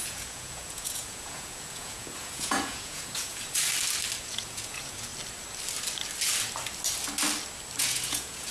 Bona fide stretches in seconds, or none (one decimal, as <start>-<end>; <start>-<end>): 3.3-4.2; 5.1-7.8

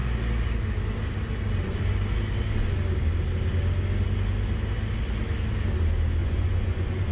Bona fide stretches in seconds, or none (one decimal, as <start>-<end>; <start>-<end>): 0.0-6.2